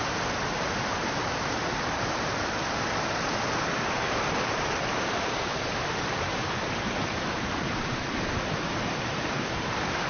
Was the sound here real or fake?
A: fake